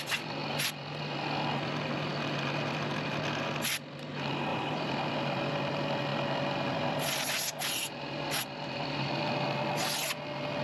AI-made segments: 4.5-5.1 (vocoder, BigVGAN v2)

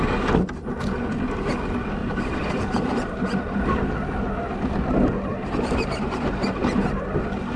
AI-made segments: 2.0-3.4 (vocoder, BigVGAN v2); 5.3-6.7

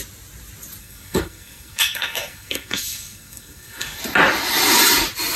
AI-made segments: 0.8-4.0 (codec, SNAC)

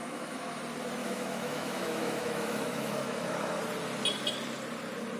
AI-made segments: 0.0-0.6 (autoencoder, DAC-VAE); 1.0-3.6

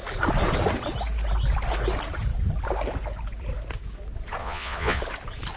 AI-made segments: 4.4-5.0 (vocoder, Vocos)

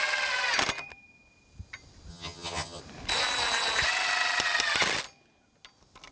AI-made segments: 2.1-2.8 (vocoder, HiFi-GAN)

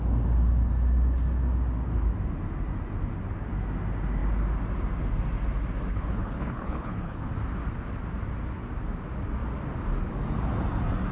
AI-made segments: 5.9-7.3 (codec, HILCodec)